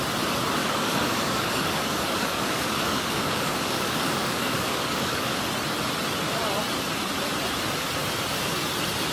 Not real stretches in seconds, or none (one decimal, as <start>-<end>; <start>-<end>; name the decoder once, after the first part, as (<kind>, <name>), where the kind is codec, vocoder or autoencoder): 0.6-5.4 (codec, DAC)